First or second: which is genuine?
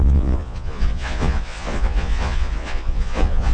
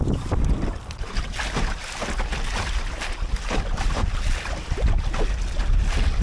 second